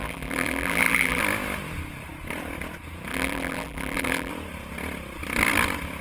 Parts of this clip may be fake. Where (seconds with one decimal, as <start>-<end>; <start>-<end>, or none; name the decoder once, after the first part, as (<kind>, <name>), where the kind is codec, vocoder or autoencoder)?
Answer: 0.0-1.2 (vocoder, BigVGAN v2); 3.1-4.3